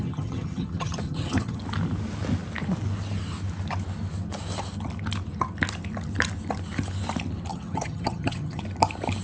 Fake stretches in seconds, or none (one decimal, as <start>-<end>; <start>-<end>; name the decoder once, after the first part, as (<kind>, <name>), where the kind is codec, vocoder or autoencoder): 0.0-1.6 (vocoder, HiFi-GAN); 7.5-8.6